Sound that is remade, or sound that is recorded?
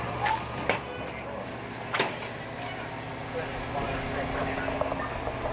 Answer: recorded